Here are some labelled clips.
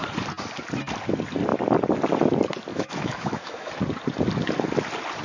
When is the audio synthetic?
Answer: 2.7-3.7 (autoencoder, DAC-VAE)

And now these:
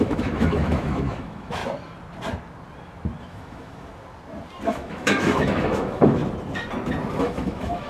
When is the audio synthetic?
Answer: 0.0-1.6 (autoencoder, DAC-VAE); 3.2-3.9; 4.7-6.2; 7.2-7.9

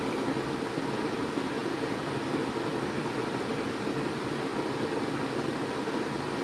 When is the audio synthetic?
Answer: none

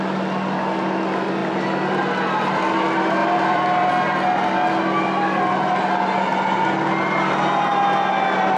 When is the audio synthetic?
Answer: 3.2-3.9 (vocoder, BigVGAN v2)